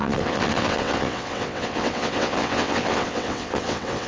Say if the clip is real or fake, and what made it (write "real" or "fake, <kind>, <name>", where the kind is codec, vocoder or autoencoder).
fake, vocoder, WaveNeXt